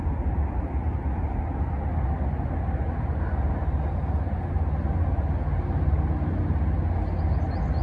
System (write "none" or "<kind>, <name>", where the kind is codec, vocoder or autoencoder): none